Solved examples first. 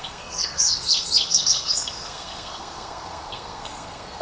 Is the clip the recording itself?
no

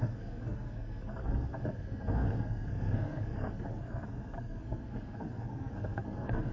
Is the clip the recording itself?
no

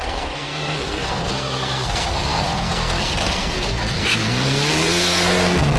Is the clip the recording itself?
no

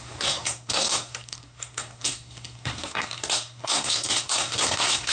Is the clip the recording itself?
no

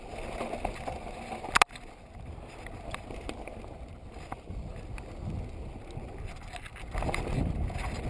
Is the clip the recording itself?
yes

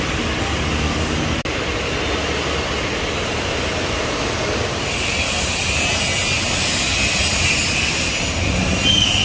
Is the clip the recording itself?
yes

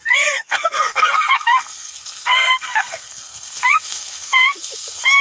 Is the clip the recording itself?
no